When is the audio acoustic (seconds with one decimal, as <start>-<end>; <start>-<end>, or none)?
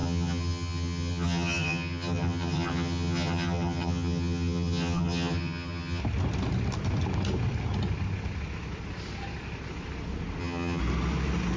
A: 6.0-10.4; 10.8-11.6